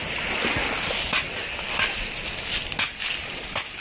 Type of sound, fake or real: real